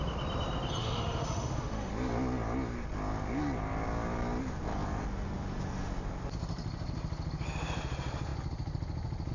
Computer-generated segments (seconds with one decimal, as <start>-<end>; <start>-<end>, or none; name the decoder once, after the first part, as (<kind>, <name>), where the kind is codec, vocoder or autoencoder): 0.8-1.9 (autoencoder, DAC-VAE)